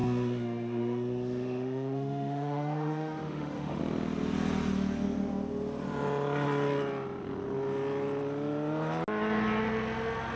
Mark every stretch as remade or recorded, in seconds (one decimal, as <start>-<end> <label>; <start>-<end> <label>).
0.0-3.8 remade; 3.8-10.4 recorded